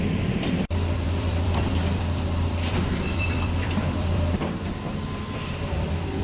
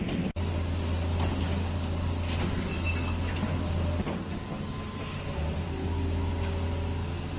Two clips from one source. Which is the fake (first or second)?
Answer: first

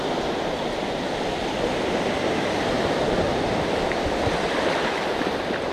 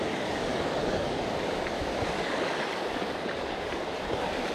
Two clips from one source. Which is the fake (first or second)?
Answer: second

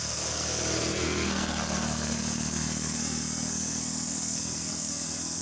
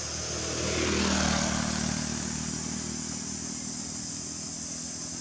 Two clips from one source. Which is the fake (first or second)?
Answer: first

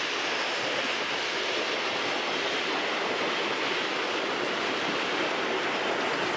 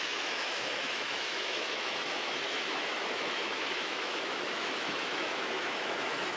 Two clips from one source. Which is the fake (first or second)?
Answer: second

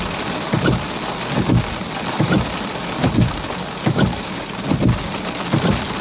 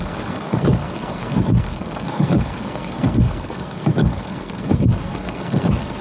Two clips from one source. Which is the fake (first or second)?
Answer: second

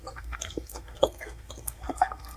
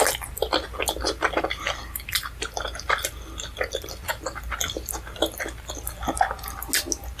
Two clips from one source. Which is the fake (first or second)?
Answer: first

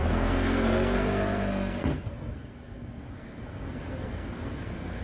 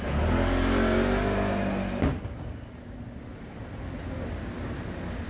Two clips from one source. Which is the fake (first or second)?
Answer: first